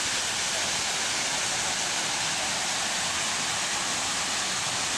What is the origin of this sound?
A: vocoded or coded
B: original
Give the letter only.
B